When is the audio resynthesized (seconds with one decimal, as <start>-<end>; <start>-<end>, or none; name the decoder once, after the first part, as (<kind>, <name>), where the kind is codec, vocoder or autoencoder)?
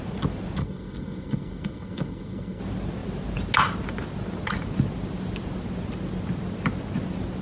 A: 0.6-2.6 (codec, SNAC)